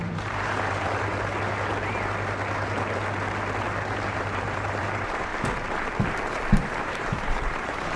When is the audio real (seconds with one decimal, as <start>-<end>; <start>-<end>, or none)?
1.1-4.1; 5.3-6.5